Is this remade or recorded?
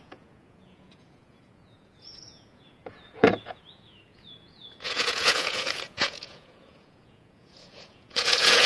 remade